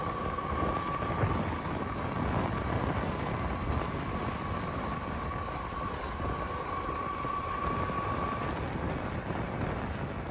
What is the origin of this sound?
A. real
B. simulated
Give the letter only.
A